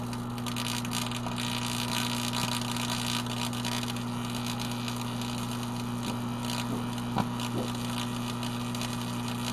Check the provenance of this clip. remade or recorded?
recorded